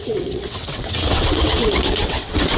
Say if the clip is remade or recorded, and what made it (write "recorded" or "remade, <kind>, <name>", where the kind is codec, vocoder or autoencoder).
remade, vocoder, WaveNeXt